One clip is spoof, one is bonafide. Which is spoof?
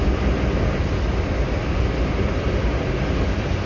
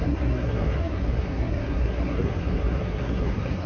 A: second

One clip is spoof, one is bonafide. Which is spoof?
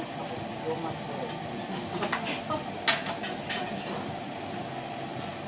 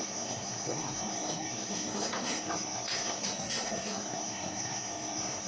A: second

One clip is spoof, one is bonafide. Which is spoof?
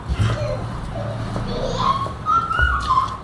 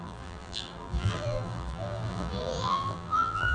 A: second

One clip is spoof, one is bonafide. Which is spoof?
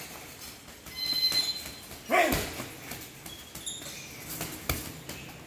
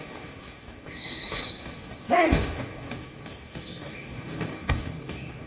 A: second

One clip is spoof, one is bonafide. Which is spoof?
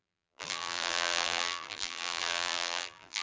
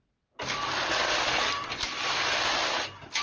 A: first